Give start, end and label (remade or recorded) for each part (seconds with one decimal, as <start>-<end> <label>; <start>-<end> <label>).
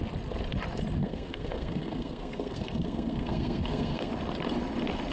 0.0-1.0 recorded; 1.0-4.1 remade; 4.1-5.1 recorded